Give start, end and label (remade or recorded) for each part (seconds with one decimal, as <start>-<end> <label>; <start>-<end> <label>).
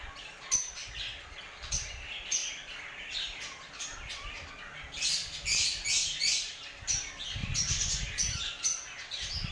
0.0-2.4 recorded; 2.4-4.5 remade; 4.5-9.5 recorded